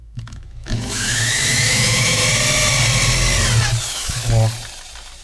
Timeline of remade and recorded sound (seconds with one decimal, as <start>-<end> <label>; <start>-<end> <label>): 0.0-2.2 remade; 2.2-3.8 recorded; 3.8-4.2 remade; 4.2-5.2 recorded